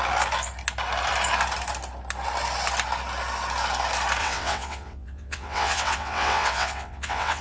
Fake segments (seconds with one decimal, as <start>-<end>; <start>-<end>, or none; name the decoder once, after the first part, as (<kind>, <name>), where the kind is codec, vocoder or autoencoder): 4.2-7.4 (vocoder, WaveNeXt)